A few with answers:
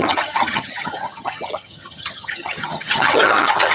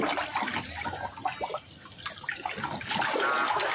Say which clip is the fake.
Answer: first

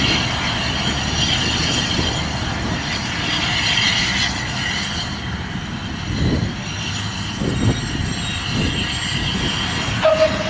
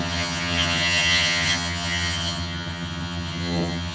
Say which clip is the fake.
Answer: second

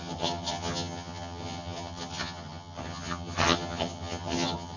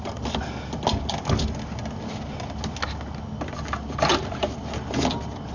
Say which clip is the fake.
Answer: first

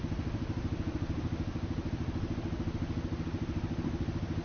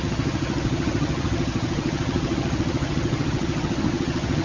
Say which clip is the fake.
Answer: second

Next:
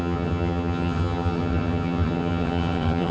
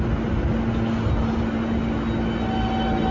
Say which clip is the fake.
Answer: first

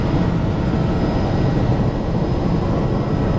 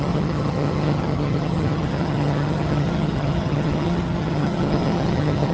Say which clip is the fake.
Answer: second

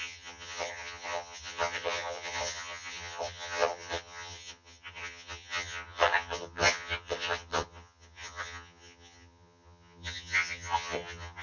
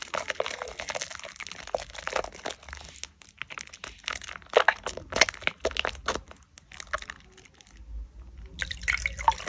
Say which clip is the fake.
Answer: first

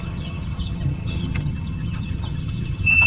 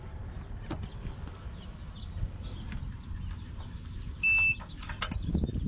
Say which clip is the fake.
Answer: first